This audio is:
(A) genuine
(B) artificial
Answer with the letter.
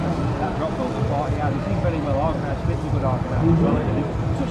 A